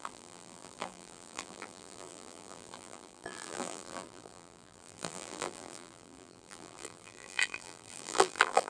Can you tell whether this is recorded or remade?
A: remade